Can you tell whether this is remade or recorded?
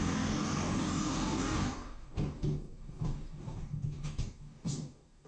remade